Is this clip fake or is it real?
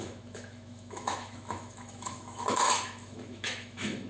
fake